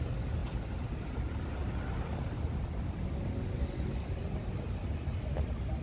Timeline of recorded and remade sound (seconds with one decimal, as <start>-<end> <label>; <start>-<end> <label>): 0.0-5.8 recorded